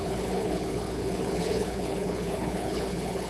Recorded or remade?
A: remade